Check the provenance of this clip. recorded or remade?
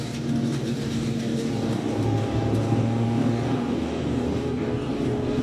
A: remade